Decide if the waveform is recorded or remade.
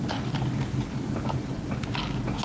recorded